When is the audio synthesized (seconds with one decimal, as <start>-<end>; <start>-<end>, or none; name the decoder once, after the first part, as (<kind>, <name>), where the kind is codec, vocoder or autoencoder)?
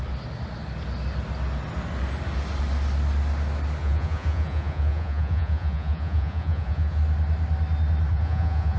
3.8-7.0 (vocoder, Vocos); 8.1-8.8